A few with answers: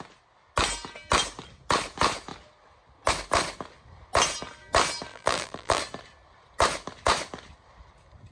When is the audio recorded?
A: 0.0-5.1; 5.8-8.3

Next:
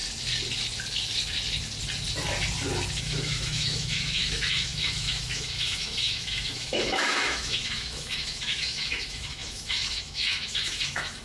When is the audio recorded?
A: 0.0-3.0

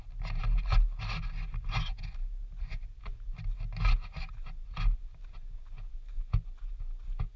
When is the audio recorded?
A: 0.0-7.4

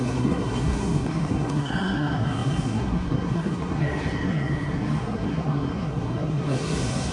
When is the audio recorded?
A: none

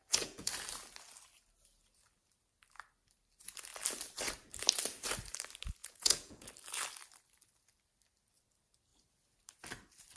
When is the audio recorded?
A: 0.5-5.8; 6.5-10.2

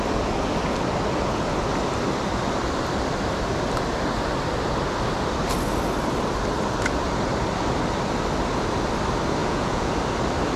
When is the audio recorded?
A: 0.0-9.4; 9.9-10.6